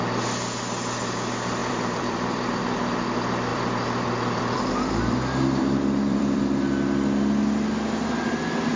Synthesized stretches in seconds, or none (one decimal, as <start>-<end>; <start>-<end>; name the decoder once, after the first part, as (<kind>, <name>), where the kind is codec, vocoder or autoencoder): 1.6-2.6 (vocoder, BigVGAN v2); 3.5-6.4